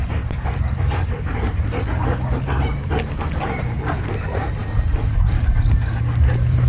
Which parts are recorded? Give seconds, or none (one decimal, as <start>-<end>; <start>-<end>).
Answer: 0.0-6.7